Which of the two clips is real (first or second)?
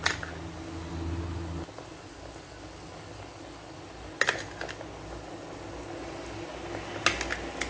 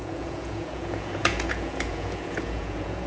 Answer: first